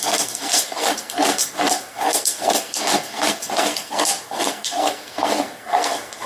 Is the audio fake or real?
fake